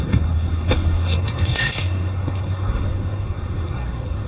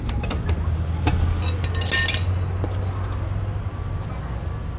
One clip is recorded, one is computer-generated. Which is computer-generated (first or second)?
first